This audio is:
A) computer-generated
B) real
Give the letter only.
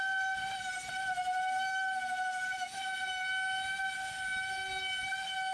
B